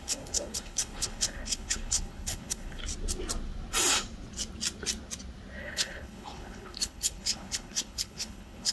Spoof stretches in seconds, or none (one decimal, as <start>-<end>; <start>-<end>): 0.0-2.8; 5.6-8.7